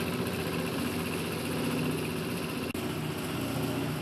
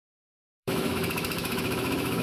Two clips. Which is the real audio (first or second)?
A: first